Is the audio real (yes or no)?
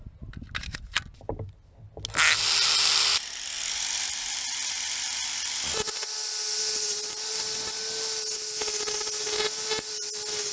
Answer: yes